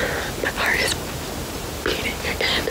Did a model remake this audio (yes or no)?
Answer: no